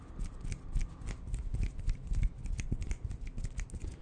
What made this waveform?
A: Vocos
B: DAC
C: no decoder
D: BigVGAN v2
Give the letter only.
C